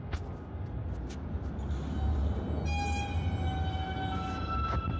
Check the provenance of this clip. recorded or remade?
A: recorded